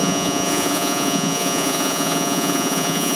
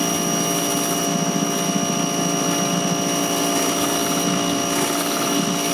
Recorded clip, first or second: second